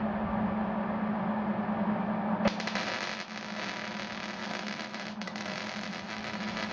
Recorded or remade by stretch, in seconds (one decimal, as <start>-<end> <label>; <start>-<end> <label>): 0.0-4.4 recorded; 4.4-6.7 remade